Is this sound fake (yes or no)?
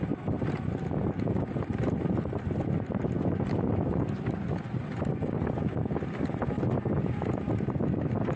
no